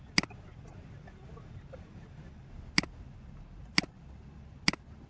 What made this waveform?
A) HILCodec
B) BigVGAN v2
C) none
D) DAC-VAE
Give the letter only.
C